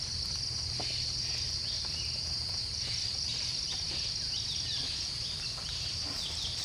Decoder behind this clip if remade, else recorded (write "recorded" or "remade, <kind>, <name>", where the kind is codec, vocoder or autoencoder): recorded